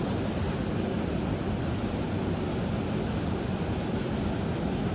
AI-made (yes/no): no